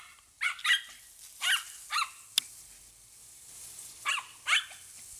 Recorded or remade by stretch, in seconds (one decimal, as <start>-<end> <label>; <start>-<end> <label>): 0.0-3.2 recorded; 3.2-4.1 remade; 4.1-5.2 recorded